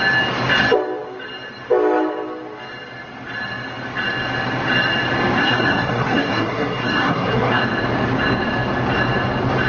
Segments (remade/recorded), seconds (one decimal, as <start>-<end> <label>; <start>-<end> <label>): 0.0-5.4 recorded; 5.4-7.6 remade; 7.6-9.7 recorded